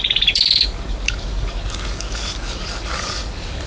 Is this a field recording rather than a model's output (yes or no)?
no